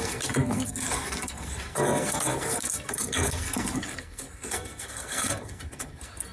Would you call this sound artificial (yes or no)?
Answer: yes